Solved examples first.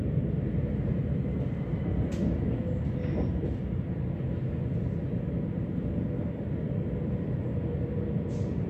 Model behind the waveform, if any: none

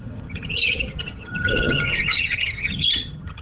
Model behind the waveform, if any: vocoder, HiFi-GAN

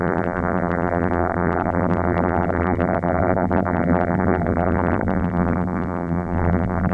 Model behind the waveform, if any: vocoder, BigVGAN v2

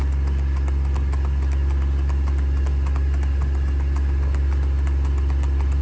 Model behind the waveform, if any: none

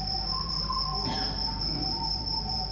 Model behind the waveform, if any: vocoder, BigVGAN v2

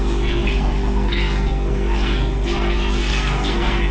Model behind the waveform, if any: codec, SNAC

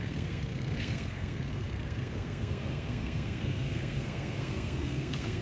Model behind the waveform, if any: codec, SNAC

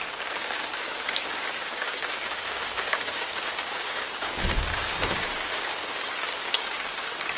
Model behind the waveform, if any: codec, DAC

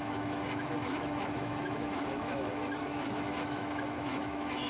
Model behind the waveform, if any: autoencoder, DAC-VAE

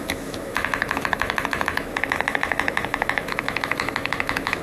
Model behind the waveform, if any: autoencoder, DAC-VAE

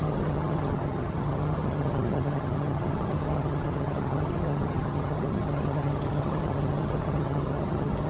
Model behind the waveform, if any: vocoder, HiFi-GAN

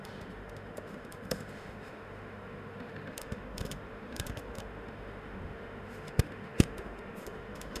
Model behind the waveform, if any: autoencoder, DAC-VAE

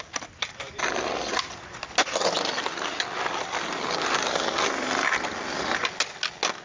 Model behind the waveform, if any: none